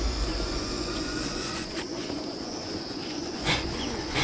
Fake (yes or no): yes